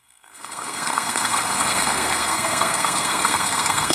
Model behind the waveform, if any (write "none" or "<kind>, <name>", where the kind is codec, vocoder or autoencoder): codec, SNAC